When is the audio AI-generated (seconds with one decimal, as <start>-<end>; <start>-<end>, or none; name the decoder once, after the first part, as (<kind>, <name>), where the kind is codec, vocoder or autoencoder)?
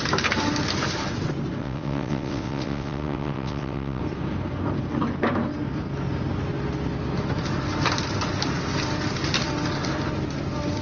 1.6-4.0 (vocoder, WaveNeXt)